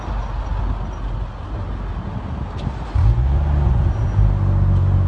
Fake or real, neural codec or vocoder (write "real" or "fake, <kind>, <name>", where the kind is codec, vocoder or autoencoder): real